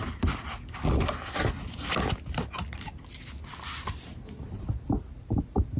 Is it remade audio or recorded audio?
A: recorded